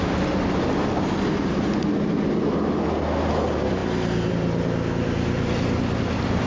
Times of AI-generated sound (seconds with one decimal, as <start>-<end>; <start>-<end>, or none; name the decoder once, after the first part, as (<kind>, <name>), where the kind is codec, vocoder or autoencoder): none